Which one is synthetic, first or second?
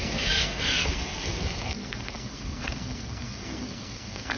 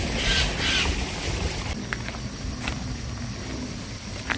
first